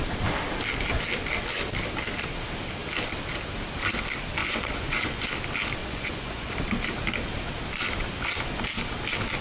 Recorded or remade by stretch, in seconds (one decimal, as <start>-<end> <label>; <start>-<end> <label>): 0.0-4.4 recorded; 4.4-5.3 remade; 5.3-5.8 recorded; 5.8-6.5 remade; 6.5-9.4 recorded